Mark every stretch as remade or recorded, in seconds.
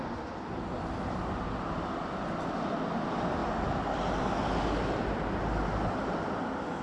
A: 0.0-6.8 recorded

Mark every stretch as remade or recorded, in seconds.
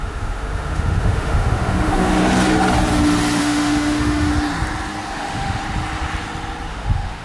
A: 0.0-2.2 remade; 2.2-3.4 recorded; 3.4-4.3 remade; 4.3-5.1 recorded; 5.1-5.6 remade; 5.6-6.7 recorded; 6.7-7.2 remade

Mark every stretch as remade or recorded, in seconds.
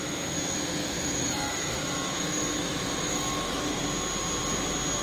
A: 0.0-0.8 recorded; 0.8-3.8 remade; 3.8-5.0 recorded